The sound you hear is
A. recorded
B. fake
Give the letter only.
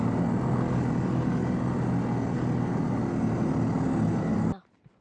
A